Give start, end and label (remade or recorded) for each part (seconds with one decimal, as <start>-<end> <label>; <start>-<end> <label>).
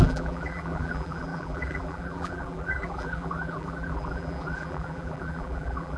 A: 0.0-6.0 remade